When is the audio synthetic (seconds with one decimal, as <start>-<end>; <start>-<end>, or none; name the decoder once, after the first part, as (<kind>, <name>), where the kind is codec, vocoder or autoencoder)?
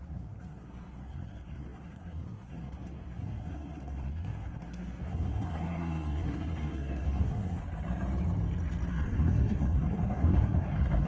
0.0-7.6 (codec, SNAC); 8.9-11.1